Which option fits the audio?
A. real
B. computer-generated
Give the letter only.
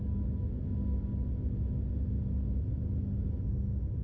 A